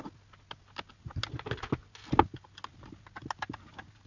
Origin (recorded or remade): recorded